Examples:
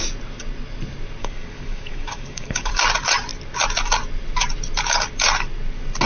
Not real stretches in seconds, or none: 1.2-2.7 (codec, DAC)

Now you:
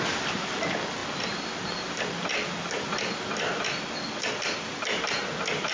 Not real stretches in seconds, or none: none

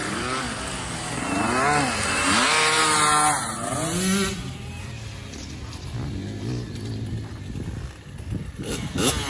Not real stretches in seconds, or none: 0.0-1.2 (codec, DAC)

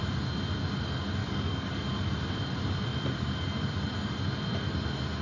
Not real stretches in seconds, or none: 1.2-1.7 (codec, DAC)

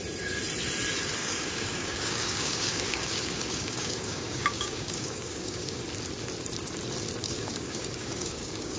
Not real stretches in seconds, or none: 1.2-5.8 (codec, DAC); 7.2-8.8

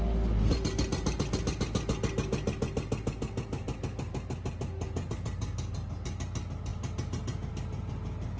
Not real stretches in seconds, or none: none

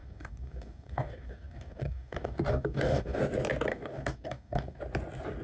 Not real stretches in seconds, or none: 0.0-3.2 (codec, DAC); 3.7-4.8

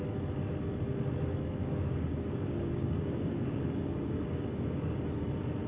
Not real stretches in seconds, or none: 1.6-5.0 (codec, DAC)